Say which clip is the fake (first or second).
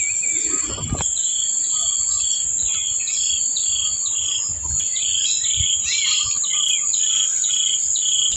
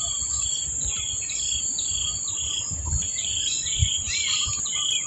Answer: second